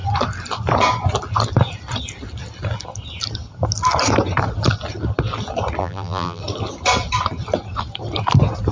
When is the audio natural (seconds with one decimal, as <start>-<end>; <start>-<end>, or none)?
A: 0.0-5.8; 6.4-8.7